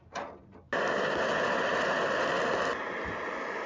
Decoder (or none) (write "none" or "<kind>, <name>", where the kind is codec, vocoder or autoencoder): none